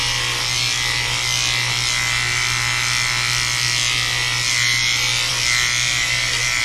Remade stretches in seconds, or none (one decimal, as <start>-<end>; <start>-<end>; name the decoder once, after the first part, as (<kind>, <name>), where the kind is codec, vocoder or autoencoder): none